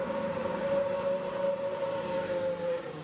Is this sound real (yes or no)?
no